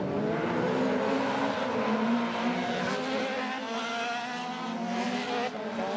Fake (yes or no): no